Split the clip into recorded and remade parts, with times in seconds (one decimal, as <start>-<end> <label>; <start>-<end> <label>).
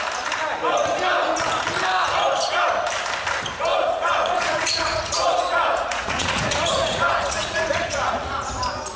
0.0-3.7 recorded; 3.7-8.5 remade; 8.5-9.0 recorded